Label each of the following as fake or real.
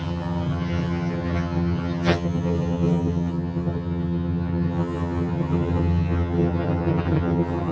fake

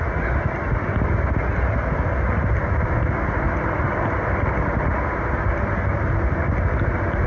real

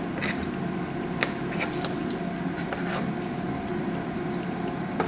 real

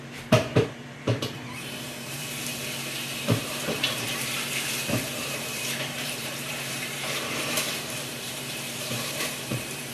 fake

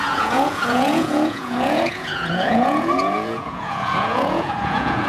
fake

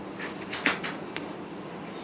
real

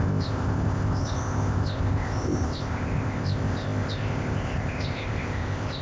fake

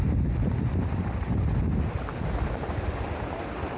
real